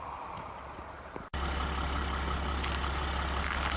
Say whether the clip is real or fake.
real